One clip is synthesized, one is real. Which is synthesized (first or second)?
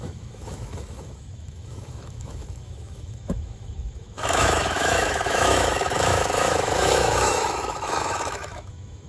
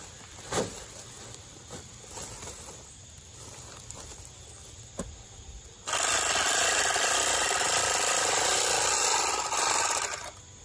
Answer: first